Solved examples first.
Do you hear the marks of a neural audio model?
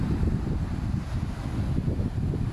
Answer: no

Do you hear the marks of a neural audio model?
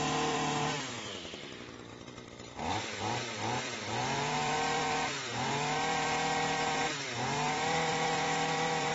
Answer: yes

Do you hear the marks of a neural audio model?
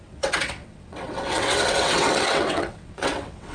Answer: yes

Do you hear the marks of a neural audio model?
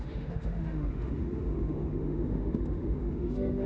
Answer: yes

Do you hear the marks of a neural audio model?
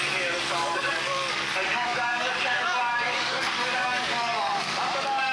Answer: yes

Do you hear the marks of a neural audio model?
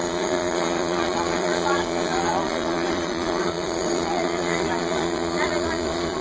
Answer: yes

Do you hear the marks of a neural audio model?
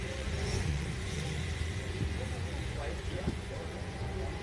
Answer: yes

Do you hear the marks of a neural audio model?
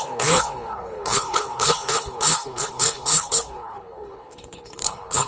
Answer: yes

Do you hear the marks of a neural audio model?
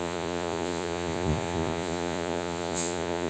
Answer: yes